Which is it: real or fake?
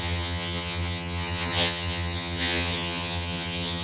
fake